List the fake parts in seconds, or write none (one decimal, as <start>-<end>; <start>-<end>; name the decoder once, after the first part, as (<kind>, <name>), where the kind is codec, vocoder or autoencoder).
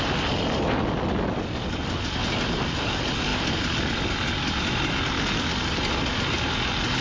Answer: none